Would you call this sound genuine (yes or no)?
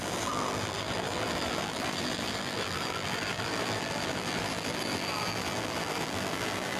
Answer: no